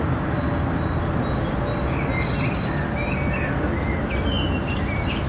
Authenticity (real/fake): real